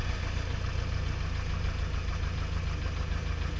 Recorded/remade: recorded